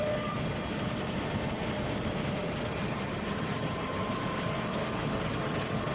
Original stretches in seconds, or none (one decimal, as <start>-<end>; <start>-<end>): 0.0-5.9